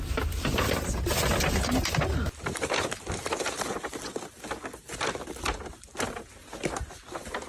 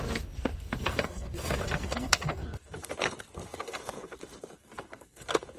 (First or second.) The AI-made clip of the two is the second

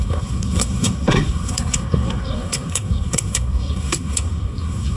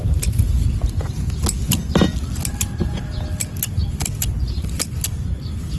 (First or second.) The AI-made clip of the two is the first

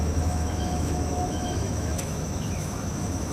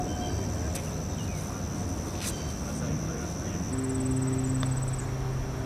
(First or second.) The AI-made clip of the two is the first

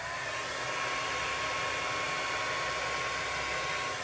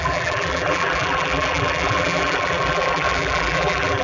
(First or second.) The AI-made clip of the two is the second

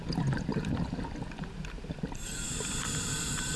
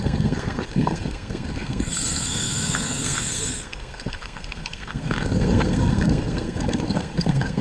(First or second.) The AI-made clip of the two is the second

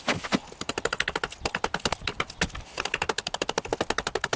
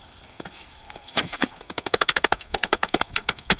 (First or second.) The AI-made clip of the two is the second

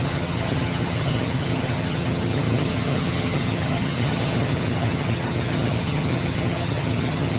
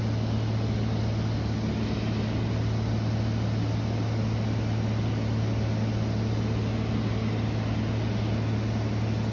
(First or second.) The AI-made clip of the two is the first